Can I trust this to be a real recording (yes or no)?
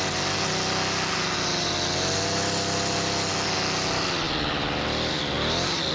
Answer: yes